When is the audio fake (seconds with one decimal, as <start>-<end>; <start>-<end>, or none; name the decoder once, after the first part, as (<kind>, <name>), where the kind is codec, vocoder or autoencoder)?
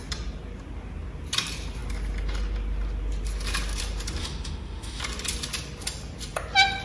4.2-5.0 (autoencoder, DAC-VAE)